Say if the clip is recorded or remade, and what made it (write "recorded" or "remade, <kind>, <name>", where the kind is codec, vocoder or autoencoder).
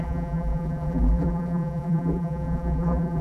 remade, vocoder, BigVGAN v2